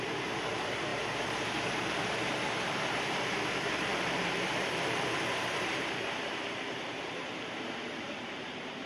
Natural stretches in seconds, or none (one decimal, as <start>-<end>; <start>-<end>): none